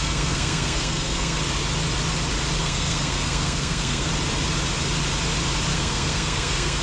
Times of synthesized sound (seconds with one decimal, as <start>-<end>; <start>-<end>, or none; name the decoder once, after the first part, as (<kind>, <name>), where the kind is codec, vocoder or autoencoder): 0.0-1.4 (codec, SNAC); 2.6-4.1; 5.7-6.8